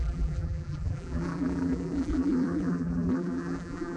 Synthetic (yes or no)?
yes